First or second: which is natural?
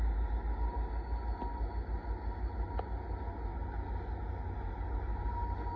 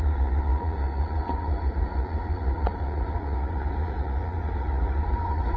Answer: first